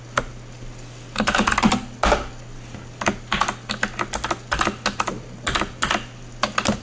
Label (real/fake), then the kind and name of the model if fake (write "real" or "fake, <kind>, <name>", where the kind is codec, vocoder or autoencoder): real